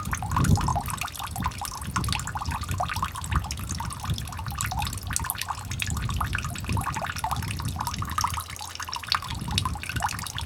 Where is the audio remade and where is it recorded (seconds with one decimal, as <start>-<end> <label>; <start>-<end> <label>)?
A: 0.0-10.5 recorded